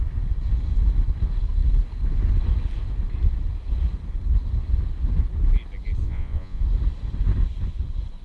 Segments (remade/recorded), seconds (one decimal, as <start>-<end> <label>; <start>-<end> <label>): 0.0-6.0 recorded; 6.0-6.6 remade; 6.6-8.2 recorded